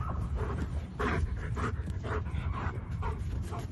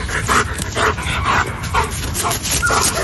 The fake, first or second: first